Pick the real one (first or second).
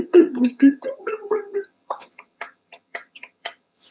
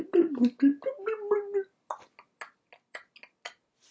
second